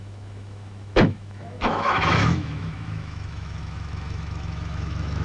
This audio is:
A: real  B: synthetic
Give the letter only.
B